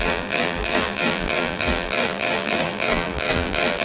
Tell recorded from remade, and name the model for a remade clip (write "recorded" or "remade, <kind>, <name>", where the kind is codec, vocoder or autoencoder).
remade, vocoder, BigVGAN v2